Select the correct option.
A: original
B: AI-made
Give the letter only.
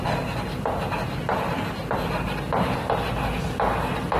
A